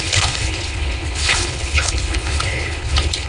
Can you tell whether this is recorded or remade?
remade